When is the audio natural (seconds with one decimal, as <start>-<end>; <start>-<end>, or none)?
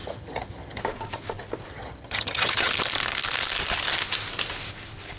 0.8-1.7; 2.7-5.2